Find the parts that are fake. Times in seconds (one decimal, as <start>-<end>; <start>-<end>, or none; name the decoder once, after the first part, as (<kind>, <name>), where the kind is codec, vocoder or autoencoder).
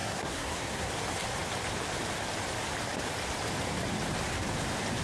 0.0-0.9 (codec, SNAC)